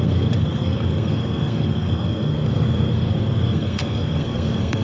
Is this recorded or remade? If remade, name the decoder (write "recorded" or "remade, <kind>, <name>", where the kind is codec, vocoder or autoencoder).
remade, codec, SNAC